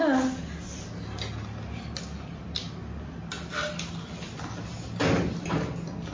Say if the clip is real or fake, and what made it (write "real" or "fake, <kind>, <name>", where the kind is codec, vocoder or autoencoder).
real